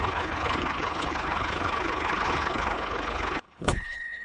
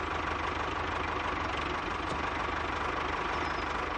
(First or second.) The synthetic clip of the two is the first